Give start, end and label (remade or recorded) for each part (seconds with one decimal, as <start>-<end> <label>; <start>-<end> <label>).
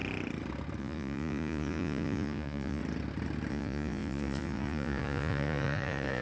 0.0-0.8 recorded; 0.8-2.8 remade; 2.8-3.5 recorded; 3.5-6.2 remade